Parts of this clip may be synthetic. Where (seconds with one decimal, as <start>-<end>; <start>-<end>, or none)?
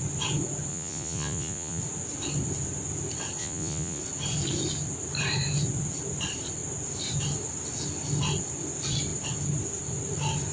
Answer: 0.7-1.8; 3.4-4.0